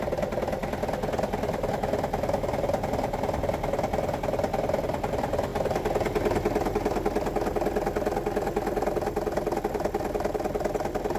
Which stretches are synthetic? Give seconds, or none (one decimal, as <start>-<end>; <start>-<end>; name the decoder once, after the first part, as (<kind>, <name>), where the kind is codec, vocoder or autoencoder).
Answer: none